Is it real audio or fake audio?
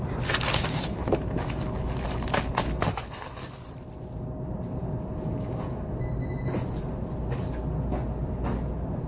real